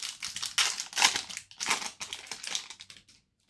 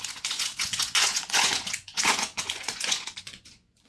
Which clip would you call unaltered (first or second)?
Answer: first